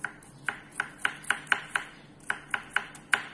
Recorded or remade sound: recorded